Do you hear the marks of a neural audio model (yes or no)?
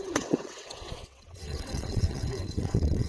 yes